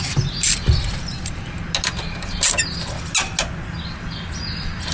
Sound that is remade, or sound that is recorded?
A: recorded